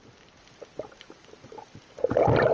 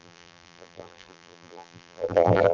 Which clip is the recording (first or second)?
first